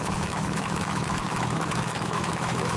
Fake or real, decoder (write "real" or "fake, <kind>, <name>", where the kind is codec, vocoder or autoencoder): fake, autoencoder, DAC-VAE